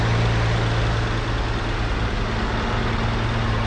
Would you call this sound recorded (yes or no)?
yes